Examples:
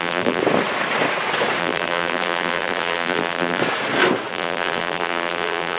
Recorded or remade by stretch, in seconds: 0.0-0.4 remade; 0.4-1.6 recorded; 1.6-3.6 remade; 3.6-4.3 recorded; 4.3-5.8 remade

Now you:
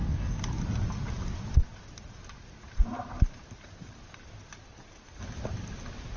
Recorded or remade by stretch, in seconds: 0.0-1.6 recorded; 1.6-5.2 remade; 5.2-6.2 recorded

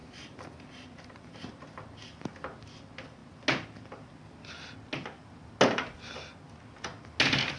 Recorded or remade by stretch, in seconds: 0.0-0.5 remade; 0.5-7.6 recorded

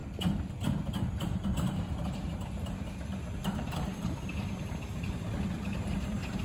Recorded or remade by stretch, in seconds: 0.0-1.5 recorded; 1.5-6.4 remade

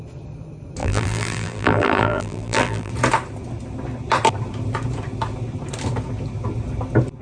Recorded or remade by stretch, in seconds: 0.0-0.8 recorded; 0.8-2.9 remade; 2.9-7.2 recorded

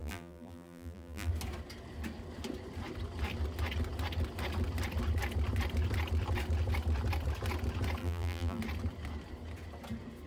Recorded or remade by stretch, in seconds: 0.0-1.3 remade; 1.3-8.0 recorded; 8.0-8.6 remade; 8.6-10.3 recorded

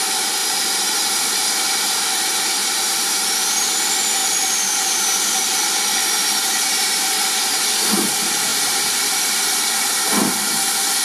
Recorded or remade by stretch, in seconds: 0.0-0.4 recorded; 0.4-1.2 remade; 1.2-2.6 recorded; 2.6-3.2 remade; 3.2-8.5 recorded; 8.5-9.4 remade; 9.4-11.0 recorded

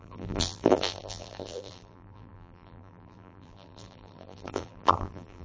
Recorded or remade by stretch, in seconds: 0.0-5.4 remade